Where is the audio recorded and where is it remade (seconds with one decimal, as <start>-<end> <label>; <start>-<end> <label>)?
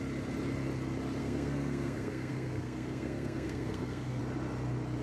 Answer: 0.0-1.2 recorded; 1.2-4.2 remade; 4.2-5.0 recorded